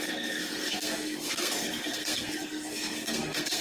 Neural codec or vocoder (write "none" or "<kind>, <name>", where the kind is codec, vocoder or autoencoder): codec, SNAC